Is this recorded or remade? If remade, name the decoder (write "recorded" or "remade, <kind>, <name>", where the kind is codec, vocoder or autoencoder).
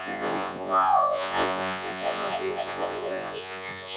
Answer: remade, vocoder, Vocos